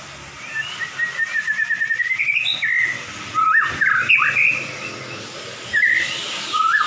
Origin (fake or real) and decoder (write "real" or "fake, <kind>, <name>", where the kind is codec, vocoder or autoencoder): real